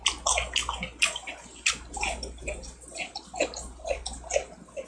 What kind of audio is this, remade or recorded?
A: recorded